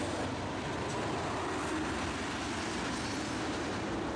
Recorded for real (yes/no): yes